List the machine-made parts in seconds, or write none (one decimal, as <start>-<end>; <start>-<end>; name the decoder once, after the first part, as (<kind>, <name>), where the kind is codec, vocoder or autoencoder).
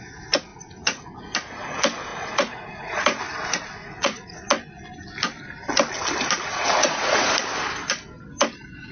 0.5-1.2 (vocoder, Vocos); 2.1-3.2; 3.8-4.4; 6.5-7.4